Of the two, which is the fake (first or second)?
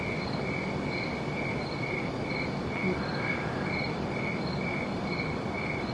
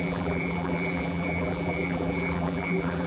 second